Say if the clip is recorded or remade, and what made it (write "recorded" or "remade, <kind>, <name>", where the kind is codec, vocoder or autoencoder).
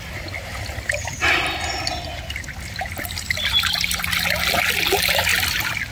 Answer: recorded